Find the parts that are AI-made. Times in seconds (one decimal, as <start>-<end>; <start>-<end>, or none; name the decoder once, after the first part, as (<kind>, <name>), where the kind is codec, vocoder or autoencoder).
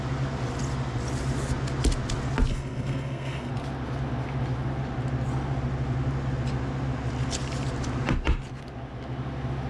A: 2.5-3.5 (codec, SNAC)